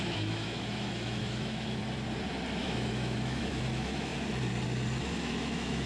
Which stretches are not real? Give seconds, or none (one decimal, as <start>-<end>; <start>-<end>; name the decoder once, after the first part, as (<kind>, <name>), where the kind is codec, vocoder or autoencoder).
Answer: 0.0-1.8 (autoencoder, DAC-VAE); 2.6-4.1; 5.0-5.9